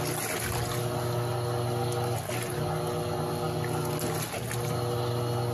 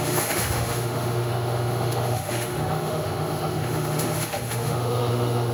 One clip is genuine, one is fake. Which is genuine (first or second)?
first